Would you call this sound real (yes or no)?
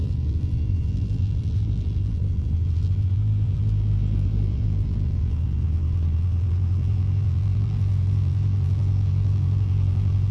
no